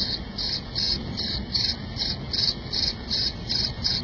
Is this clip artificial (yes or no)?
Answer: no